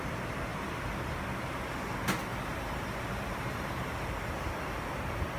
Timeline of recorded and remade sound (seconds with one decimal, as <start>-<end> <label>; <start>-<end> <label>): 0.0-0.5 recorded; 0.5-1.2 remade; 1.2-2.3 recorded; 2.3-4.1 remade; 4.1-5.4 recorded

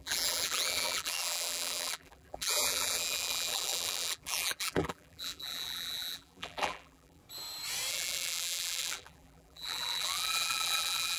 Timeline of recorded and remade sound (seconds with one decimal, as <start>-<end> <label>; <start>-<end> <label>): 0.0-7.2 remade; 7.2-7.9 recorded; 7.9-11.2 remade

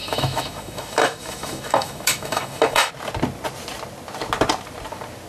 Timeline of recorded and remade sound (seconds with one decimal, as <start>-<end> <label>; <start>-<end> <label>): 0.0-2.9 remade; 2.9-5.3 recorded

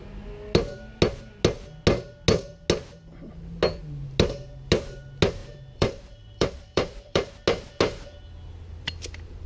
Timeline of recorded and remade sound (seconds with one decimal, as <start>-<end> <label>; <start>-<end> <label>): 0.0-5.4 recorded; 5.4-7.3 remade; 7.3-9.5 recorded

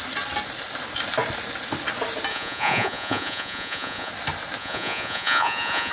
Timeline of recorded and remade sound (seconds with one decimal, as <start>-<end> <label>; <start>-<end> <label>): 0.0-2.3 recorded; 2.3-4.1 remade; 4.1-4.6 recorded; 4.6-5.9 remade

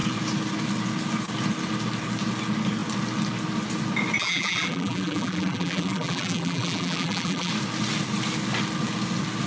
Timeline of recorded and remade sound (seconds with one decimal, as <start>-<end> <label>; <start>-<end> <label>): 0.0-4.2 recorded; 4.2-7.5 remade; 7.5-9.5 recorded

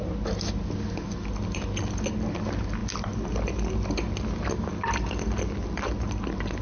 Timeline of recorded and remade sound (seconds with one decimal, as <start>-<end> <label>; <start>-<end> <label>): 0.0-6.6 recorded

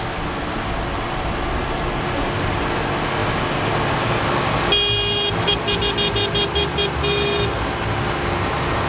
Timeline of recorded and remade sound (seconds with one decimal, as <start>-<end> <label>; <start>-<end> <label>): 0.0-8.9 recorded